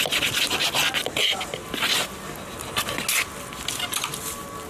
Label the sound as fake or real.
real